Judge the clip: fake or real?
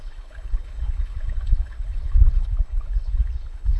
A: fake